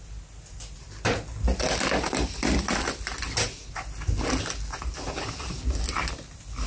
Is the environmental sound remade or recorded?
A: recorded